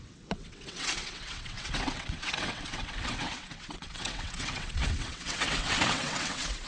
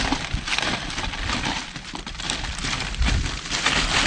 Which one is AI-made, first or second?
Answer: first